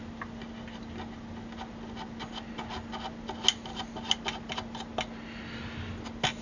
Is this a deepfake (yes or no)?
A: no